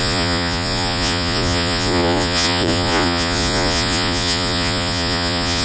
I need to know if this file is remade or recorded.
remade